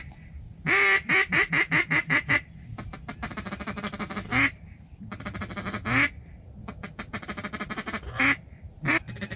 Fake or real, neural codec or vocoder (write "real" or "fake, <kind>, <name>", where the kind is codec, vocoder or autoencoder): real